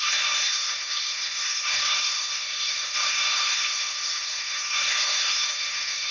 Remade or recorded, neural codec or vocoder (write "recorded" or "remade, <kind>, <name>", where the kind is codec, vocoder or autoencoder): remade, codec, SNAC